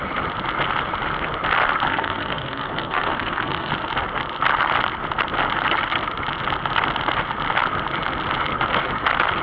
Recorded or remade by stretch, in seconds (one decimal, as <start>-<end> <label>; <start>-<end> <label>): 0.0-1.9 recorded; 1.9-3.7 remade; 3.7-9.4 recorded